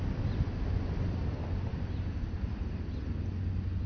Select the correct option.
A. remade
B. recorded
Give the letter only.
B